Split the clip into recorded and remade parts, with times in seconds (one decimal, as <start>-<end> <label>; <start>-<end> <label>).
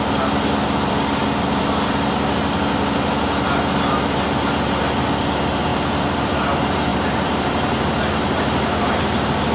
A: 0.0-5.7 recorded; 5.7-6.3 remade; 6.3-6.9 recorded; 6.9-9.5 remade